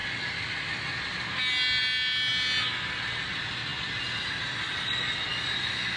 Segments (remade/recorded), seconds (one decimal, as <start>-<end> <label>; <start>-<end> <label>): 0.0-6.0 recorded